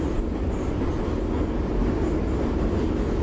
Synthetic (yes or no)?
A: no